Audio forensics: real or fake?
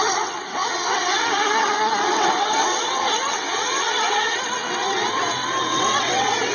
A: fake